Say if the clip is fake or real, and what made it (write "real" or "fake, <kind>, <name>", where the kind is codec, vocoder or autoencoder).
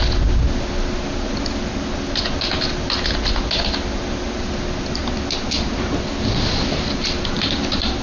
real